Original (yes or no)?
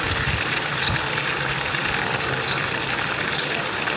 yes